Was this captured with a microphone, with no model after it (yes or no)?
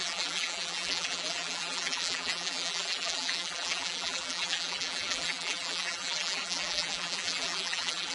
no